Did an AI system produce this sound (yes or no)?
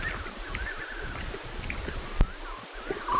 no